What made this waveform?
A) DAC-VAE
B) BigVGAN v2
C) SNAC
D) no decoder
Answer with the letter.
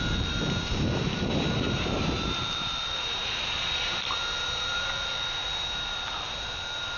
B